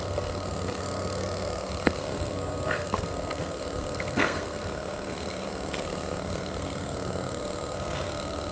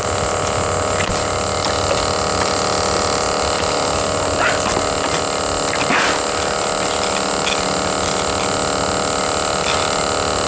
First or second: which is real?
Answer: second